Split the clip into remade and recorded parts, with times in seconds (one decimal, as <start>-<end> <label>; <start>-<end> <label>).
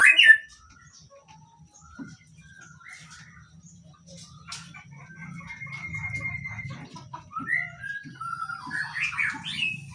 0.0-9.9 recorded